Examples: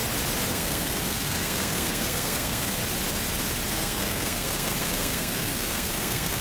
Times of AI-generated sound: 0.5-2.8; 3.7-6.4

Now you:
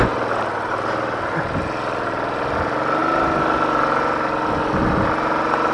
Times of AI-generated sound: none

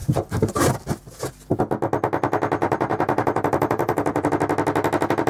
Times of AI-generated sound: 0.0-1.0; 2.6-4.3

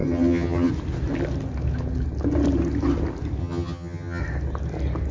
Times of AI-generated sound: 0.0-0.7; 3.4-4.2

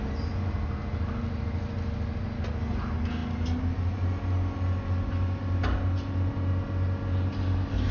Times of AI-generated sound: none

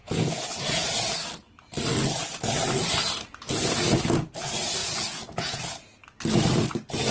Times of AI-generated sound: 0.0-0.9; 4.8-6.0

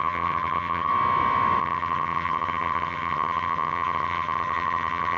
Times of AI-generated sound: 0.0-0.9; 1.6-5.2

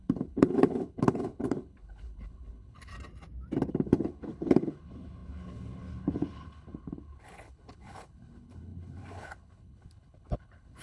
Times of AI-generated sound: 0.0-2.9; 3.7-10.8